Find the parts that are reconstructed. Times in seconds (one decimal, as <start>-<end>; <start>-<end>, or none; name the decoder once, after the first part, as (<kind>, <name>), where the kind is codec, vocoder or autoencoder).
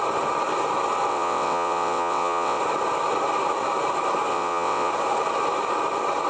1.1-2.6 (vocoder, WaveNeXt); 4.3-4.9